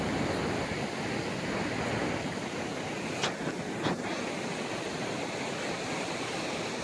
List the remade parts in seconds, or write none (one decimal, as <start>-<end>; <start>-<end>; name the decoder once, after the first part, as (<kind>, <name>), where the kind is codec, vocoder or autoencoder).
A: none